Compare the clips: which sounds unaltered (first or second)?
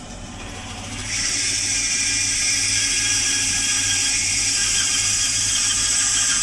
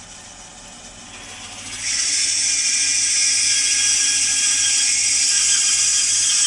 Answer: second